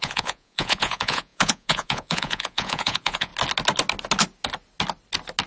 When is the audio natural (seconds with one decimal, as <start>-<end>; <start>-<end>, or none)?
3.3-5.5